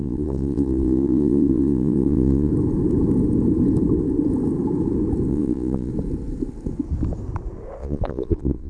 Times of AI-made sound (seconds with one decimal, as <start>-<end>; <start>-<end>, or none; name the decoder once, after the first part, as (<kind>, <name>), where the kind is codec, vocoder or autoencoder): 0.0-2.5 (vocoder, Vocos); 5.3-5.9; 7.8-8.7